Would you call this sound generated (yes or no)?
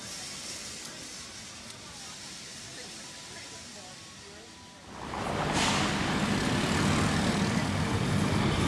no